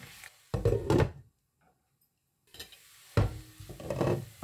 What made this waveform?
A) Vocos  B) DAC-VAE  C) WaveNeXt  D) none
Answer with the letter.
D